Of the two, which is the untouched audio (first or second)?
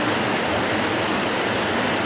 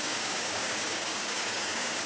first